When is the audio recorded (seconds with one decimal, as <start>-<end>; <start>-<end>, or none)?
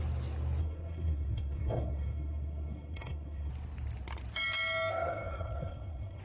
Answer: 0.0-0.6; 3.5-4.9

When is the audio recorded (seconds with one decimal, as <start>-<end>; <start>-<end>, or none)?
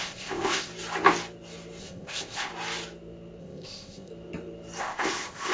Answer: 0.7-1.8; 2.5-3.4; 4.1-4.8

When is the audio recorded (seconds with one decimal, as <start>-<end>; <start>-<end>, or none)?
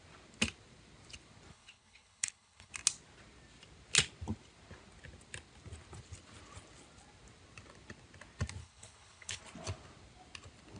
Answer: 0.0-1.5; 2.7-8.6; 9.4-10.8